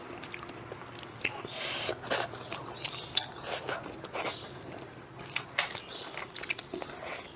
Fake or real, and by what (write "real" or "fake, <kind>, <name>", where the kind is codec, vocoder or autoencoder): real